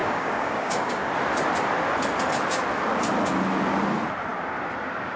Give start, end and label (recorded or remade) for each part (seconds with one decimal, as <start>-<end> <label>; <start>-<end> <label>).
0.0-1.1 remade; 1.1-5.2 recorded